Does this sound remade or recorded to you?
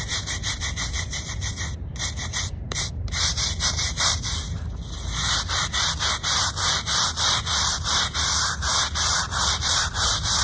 remade